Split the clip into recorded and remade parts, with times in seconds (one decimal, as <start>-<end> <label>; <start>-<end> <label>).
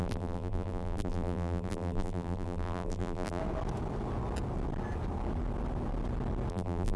0.0-3.4 remade; 3.4-6.5 recorded; 6.5-7.0 remade